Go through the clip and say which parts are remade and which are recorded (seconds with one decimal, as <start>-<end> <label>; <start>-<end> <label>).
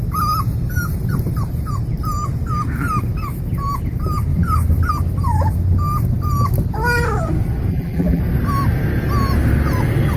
0.0-7.7 recorded; 7.7-8.2 remade; 8.2-10.2 recorded